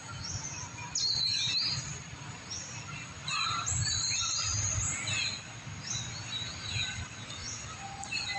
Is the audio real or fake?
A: real